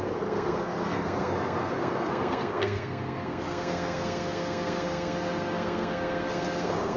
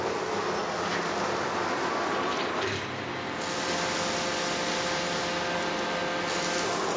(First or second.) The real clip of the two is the second